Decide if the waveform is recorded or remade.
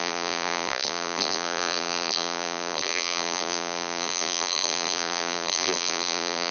remade